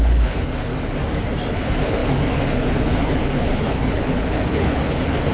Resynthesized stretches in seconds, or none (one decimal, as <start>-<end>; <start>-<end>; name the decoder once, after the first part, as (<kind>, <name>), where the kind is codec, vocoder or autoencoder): 0.0-0.7 (codec, HILCodec); 1.5-5.3